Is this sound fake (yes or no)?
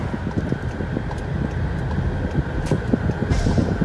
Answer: no